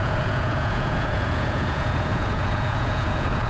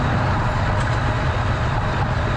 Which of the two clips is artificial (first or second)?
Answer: first